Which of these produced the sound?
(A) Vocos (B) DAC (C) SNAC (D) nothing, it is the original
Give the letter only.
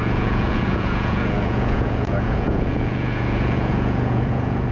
A